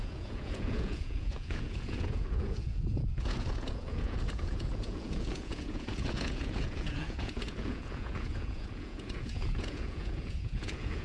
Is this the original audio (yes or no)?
no